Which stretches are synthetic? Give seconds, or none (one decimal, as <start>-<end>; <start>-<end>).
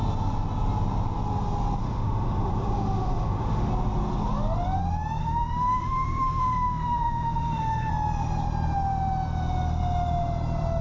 1.8-3.7; 5.2-7.9